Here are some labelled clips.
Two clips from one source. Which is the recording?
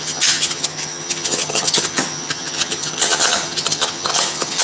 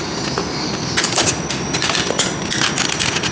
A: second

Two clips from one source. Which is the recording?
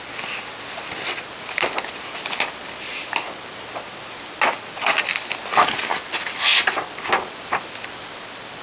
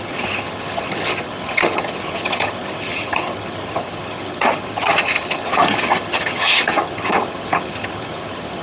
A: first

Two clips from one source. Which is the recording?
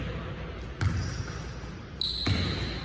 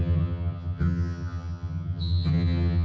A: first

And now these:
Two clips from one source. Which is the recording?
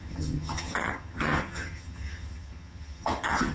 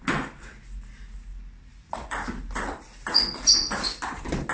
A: second